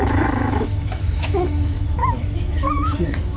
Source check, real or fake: fake